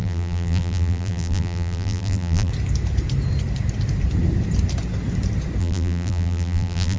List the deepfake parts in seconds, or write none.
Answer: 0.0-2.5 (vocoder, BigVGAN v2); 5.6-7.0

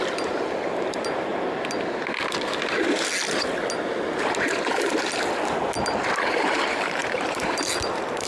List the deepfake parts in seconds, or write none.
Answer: 0.0-1.3 (vocoder, BigVGAN v2); 6.3-8.3

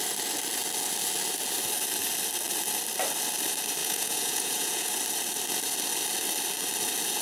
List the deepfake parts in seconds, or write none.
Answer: 3.8-4.9 (vocoder, Vocos)

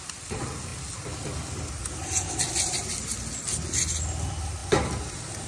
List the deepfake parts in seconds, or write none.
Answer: none